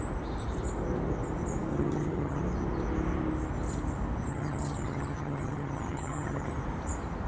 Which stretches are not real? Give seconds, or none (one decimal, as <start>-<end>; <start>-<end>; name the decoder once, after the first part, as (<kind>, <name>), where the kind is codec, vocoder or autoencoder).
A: 1.7-2.4 (vocoder, HiFi-GAN); 4.3-6.5